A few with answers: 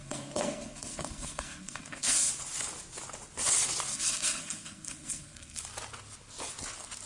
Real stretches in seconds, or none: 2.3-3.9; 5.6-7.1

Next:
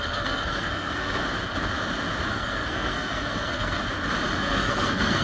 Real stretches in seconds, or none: 1.2-2.3; 3.8-4.4

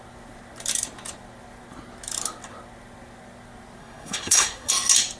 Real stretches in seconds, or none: 0.0-3.8; 4.7-5.2

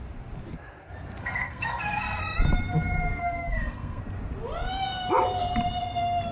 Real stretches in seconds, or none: 0.0-1.2; 2.2-3.2; 4.0-6.3

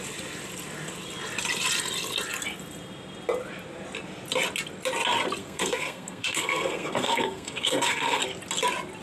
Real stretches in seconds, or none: 0.0-5.4; 8.2-9.0